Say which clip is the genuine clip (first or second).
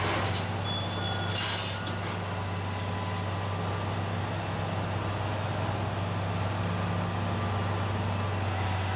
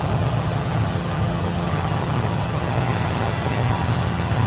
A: first